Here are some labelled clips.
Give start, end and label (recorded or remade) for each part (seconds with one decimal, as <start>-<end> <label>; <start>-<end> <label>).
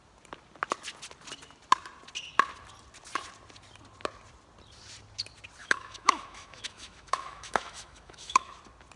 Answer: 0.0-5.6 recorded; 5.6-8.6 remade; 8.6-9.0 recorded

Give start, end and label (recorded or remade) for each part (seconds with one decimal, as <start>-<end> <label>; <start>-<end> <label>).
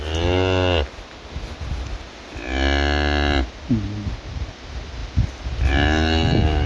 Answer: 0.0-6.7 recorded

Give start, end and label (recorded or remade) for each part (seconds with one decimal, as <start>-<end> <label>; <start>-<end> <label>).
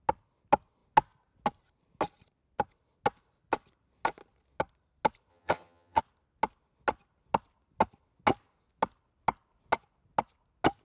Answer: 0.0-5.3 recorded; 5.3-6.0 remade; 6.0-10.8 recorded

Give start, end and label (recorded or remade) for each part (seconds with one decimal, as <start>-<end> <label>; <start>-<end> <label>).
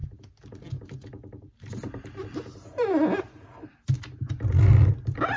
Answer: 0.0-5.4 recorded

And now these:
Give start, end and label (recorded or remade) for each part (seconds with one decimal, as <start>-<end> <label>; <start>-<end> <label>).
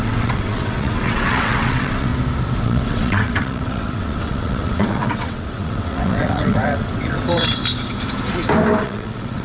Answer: 0.0-2.1 remade; 2.1-2.6 recorded; 2.6-7.6 remade; 7.6-8.8 recorded; 8.8-9.4 remade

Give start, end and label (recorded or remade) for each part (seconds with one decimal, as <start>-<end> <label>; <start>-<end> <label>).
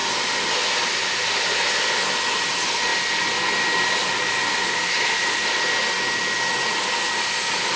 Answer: 0.0-7.8 recorded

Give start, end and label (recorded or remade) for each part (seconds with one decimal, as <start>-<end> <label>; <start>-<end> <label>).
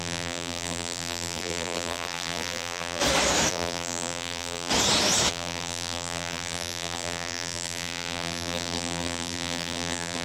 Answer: 0.0-3.0 remade; 3.0-3.5 recorded; 3.5-4.7 remade; 4.7-5.3 recorded; 5.3-10.2 remade